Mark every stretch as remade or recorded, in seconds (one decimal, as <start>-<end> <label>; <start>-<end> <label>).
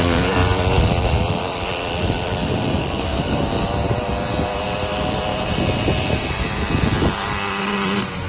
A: 0.0-2.8 recorded; 2.8-3.4 remade; 3.4-8.3 recorded